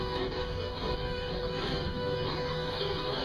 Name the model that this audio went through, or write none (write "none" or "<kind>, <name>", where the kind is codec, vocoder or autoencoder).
codec, DAC